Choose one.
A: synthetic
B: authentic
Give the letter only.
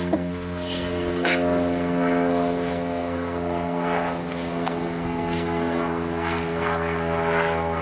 A